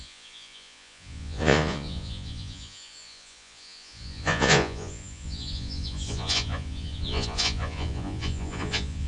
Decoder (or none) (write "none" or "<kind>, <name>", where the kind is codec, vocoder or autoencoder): vocoder, Vocos